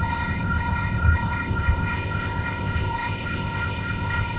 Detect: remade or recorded remade